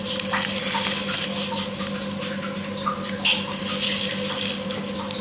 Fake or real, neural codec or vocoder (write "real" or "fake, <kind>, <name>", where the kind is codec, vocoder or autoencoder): real